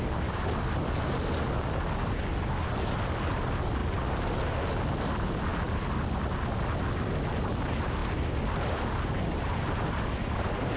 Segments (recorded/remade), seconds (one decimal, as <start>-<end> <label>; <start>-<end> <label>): 0.0-10.8 recorded